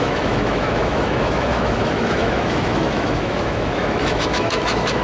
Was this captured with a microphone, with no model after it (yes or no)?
no